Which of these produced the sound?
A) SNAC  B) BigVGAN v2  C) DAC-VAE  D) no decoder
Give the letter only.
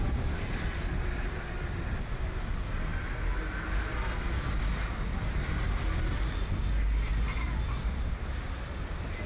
D